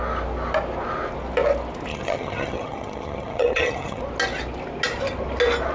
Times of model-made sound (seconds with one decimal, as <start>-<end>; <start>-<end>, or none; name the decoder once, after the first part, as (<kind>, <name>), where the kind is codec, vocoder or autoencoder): 1.9-4.0 (vocoder, HiFi-GAN)